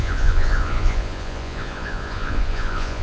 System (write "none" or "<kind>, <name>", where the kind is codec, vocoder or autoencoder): vocoder, Vocos